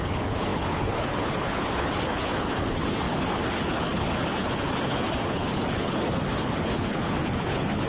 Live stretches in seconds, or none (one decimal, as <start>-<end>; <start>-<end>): none